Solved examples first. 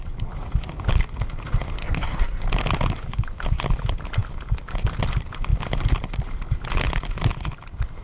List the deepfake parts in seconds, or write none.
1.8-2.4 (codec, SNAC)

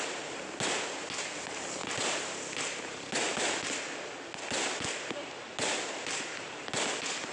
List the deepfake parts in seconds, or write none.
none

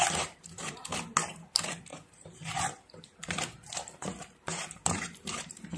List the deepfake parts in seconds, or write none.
0.0-0.8 (vocoder, BigVGAN v2); 1.3-5.8

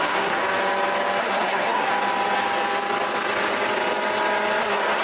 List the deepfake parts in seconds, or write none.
0.0-0.4 (codec, SNAC); 1.2-1.9; 4.6-5.0

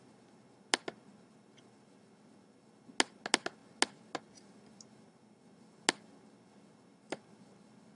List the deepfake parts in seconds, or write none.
none

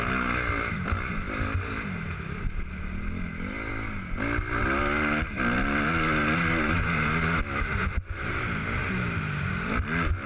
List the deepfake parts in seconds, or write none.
none

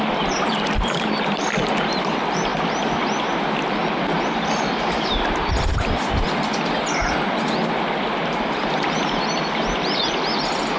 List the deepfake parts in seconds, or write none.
0.0-2.5 (vocoder, BigVGAN v2); 4.1-10.8

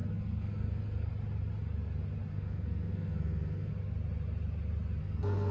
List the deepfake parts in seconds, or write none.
0.0-1.1 (codec, SNAC); 2.3-3.7; 5.0-5.5